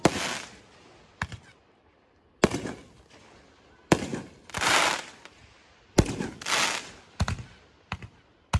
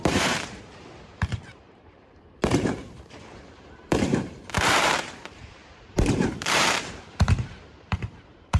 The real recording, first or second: first